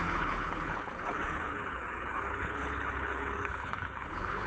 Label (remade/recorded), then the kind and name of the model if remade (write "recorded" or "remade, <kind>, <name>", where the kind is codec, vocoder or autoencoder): remade, codec, HILCodec